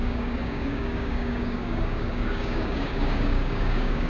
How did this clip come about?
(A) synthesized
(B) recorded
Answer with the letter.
A